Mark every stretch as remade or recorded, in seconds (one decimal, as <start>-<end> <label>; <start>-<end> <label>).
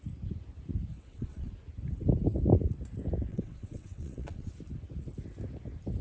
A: 0.0-0.9 recorded; 0.9-1.5 remade; 1.5-3.3 recorded; 3.3-4.5 remade; 4.5-6.0 recorded